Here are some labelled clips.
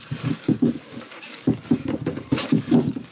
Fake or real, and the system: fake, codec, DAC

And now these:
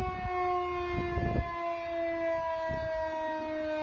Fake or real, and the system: real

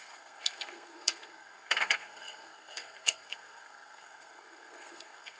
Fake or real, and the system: fake, codec, SNAC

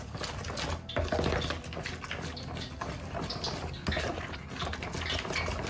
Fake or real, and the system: real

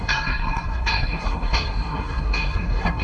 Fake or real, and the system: fake, codec, SNAC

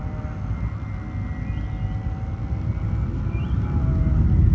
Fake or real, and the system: real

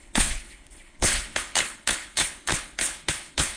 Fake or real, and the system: fake, codec, HILCodec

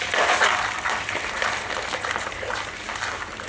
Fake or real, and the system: real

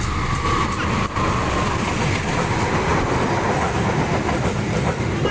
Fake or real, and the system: real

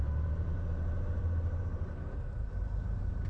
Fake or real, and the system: fake, vocoder, BigVGAN v2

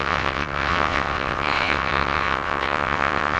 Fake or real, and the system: fake, vocoder, WaveNeXt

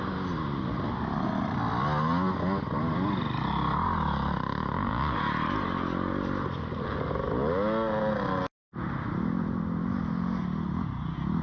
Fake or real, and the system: real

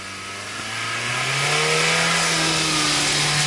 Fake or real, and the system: real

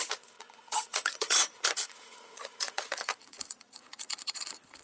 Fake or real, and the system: fake, vocoder, Vocos